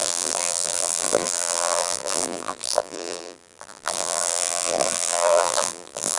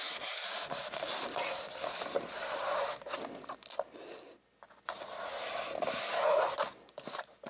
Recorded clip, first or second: second